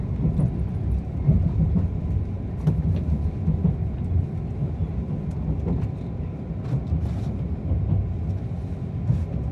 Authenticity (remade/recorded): recorded